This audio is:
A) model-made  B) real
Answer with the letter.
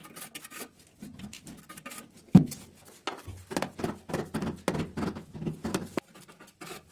B